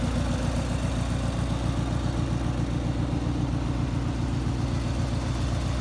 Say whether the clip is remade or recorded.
recorded